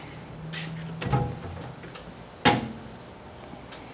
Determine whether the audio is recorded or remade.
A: recorded